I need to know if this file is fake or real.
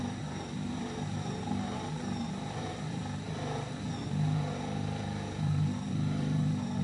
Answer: fake